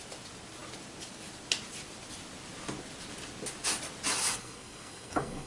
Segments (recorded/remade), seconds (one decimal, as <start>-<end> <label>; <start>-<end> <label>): 0.0-4.2 recorded; 4.2-5.5 remade